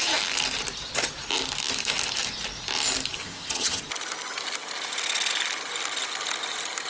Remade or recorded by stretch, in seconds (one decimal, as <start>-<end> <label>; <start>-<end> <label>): 0.0-3.2 recorded; 3.2-3.8 remade; 3.8-6.9 recorded